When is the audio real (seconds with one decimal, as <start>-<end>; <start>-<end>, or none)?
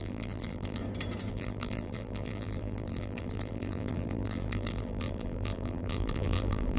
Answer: 0.8-1.3